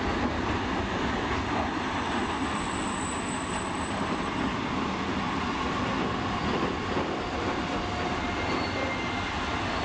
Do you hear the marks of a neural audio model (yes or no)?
no